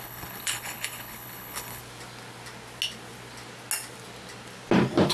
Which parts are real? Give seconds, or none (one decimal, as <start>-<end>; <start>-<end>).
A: 1.8-5.1